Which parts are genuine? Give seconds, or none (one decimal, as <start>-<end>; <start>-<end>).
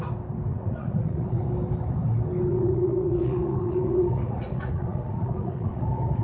0.0-0.5; 1.5-2.5